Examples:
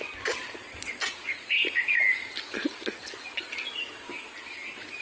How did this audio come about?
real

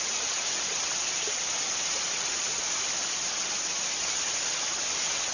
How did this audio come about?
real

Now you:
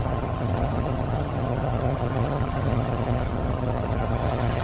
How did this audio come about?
fake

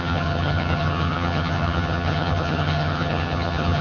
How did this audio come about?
fake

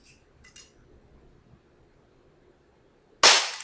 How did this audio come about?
real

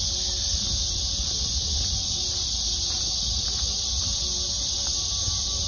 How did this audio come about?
real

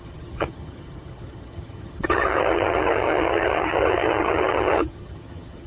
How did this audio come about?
fake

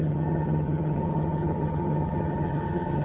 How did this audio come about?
fake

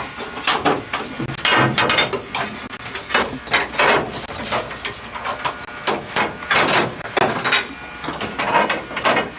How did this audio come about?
real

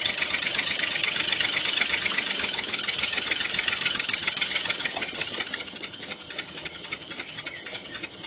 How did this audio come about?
fake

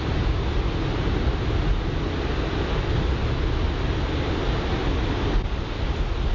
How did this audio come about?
real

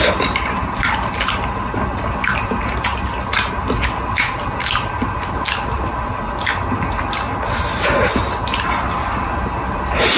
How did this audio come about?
real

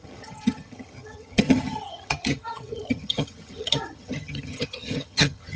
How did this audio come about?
fake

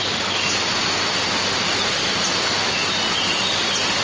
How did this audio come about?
real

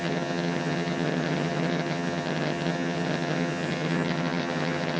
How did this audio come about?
fake